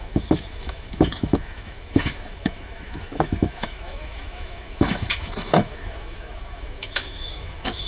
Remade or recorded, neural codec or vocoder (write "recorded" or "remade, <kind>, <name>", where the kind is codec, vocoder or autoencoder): remade, autoencoder, DAC-VAE